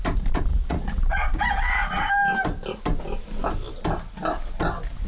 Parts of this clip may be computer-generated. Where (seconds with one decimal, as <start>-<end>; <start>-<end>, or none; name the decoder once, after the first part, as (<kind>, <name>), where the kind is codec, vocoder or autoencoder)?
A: 0.5-2.1 (vocoder, Vocos)